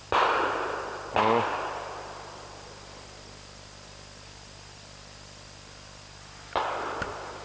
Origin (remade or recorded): recorded